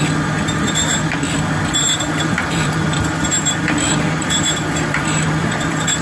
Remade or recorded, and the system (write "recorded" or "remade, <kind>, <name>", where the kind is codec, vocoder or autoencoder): remade, vocoder, BigVGAN v2